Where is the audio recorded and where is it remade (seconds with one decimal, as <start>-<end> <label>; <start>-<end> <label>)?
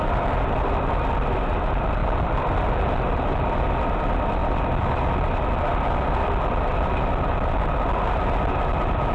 0.0-2.0 recorded; 2.0-3.6 remade; 3.6-4.4 recorded; 4.4-7.5 remade; 7.5-9.1 recorded